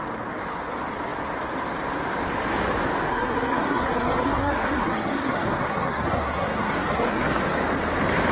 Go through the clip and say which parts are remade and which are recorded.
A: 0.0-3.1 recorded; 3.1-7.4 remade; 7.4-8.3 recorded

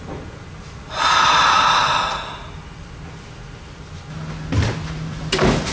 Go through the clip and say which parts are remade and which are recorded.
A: 0.0-5.7 recorded

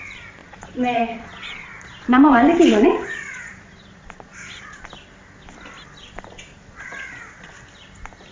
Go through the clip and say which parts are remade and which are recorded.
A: 0.0-0.4 recorded; 0.4-4.8 remade; 4.8-6.5 recorded; 6.5-7.5 remade; 7.5-8.3 recorded

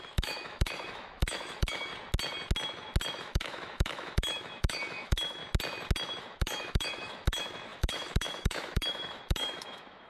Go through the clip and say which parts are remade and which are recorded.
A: 0.0-1.9 remade; 1.9-3.2 recorded; 3.2-5.4 remade; 5.4-6.2 recorded; 6.2-10.1 remade